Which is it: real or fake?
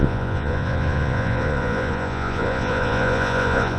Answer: fake